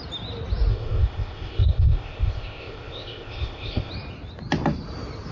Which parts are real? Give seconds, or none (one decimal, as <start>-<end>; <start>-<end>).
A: 0.0-0.7; 3.9-5.3